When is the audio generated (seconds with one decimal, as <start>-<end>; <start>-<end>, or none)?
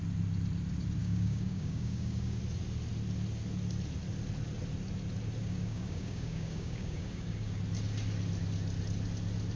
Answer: 1.0-2.4; 5.4-7.6